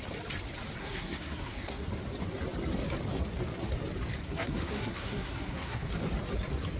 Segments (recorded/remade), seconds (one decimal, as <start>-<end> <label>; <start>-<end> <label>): 0.0-0.8 recorded; 0.8-1.9 remade; 1.9-4.2 recorded; 4.2-5.9 remade; 5.9-6.8 recorded